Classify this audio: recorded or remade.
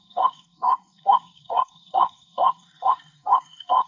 remade